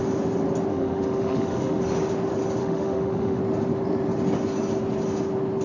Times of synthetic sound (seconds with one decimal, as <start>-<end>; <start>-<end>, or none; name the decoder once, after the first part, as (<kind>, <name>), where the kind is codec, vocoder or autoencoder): 0.7-1.8 (autoencoder, DAC-VAE); 2.6-3.4